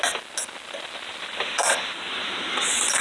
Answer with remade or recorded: recorded